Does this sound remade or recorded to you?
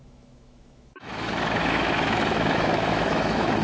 remade